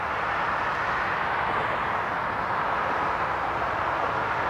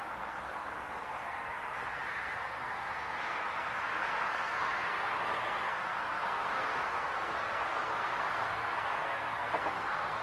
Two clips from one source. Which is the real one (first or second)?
first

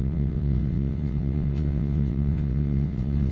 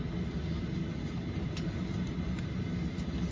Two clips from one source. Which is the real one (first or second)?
second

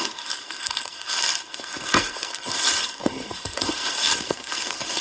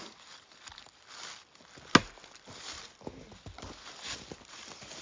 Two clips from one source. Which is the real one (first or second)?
second